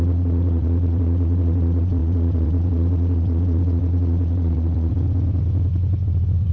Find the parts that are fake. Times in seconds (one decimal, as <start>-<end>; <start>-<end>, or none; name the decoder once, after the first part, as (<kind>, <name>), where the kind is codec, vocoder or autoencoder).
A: 0.0-4.9 (vocoder, Vocos)

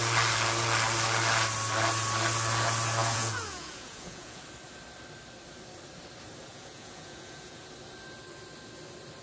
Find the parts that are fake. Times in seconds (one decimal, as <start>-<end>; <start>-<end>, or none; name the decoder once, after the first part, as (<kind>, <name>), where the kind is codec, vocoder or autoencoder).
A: 3.0-4.4 (vocoder, Vocos); 6.5-7.7

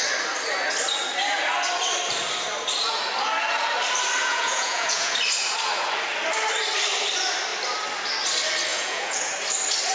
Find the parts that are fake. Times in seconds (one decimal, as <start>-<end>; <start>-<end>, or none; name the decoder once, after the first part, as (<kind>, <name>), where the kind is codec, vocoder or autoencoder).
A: 4.2-5.1 (vocoder, Vocos); 8.7-9.3

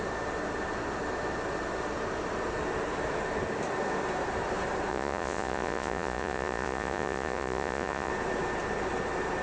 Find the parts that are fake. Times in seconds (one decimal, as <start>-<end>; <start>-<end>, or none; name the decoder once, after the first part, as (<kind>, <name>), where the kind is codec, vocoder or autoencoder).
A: 4.9-8.1 (vocoder, Vocos)

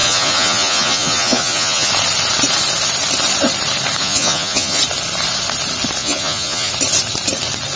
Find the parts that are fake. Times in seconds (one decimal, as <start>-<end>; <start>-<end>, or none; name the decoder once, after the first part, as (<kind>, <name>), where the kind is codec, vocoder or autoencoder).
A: 0.0-1.9 (vocoder, Vocos); 4.0-4.8; 6.0-6.7

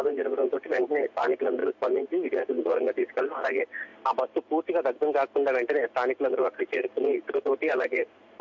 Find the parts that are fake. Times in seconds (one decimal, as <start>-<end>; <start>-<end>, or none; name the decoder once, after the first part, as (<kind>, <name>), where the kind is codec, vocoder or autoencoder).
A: 0.0-3.9 (vocoder, Vocos); 6.3-8.4

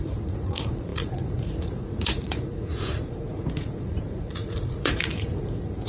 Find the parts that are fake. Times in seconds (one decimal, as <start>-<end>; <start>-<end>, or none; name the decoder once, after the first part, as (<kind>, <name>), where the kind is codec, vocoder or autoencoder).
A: 0.0-5.9 (vocoder, Vocos)

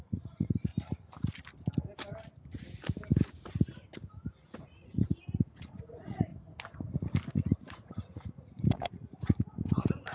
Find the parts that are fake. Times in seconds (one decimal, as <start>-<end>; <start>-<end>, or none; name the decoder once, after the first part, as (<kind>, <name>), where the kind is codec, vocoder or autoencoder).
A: 0.0-0.7 (vocoder, Vocos); 4.6-6.3; 7.3-10.1